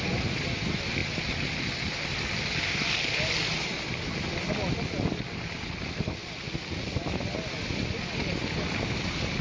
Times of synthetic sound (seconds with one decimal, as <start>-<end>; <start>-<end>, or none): 1.0-1.8